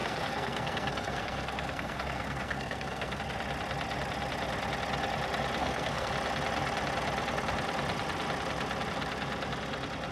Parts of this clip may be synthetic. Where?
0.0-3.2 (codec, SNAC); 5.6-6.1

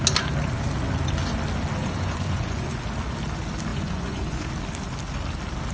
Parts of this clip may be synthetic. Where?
1.8-2.8 (vocoder, Vocos); 3.7-4.5

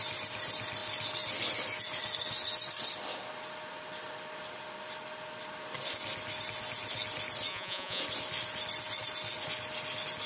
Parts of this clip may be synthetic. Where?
7.5-8.0 (vocoder, Vocos)

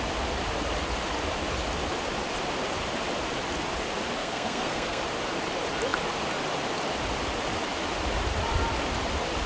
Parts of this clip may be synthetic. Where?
4.2-5.0 (codec, SNAC)

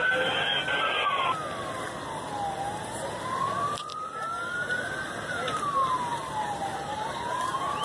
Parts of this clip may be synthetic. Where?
3.9-5.6 (vocoder, BigVGAN v2); 6.1-7.3